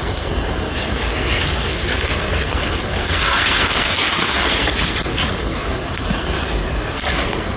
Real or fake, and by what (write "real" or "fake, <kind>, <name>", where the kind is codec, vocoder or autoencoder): fake, codec, SNAC